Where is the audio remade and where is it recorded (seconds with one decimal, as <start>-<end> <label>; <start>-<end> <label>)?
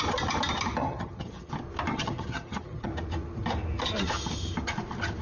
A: 0.0-0.8 recorded; 0.8-1.5 remade; 1.5-1.9 recorded; 1.9-2.9 remade; 2.9-5.2 recorded